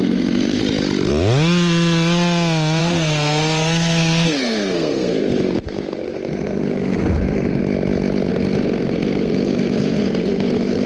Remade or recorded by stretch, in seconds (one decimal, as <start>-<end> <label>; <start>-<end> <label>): 0.0-0.6 remade; 0.6-2.8 recorded; 2.8-7.6 remade; 7.6-8.3 recorded; 8.3-10.9 remade